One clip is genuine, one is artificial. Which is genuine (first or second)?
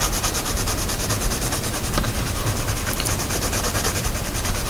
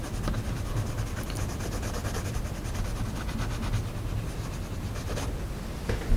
second